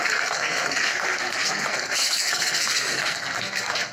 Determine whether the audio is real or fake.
fake